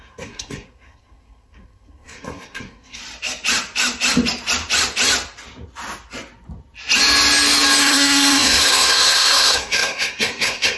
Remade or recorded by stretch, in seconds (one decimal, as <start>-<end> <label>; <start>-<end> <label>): 0.0-3.0 remade; 3.0-7.8 recorded; 7.8-10.8 remade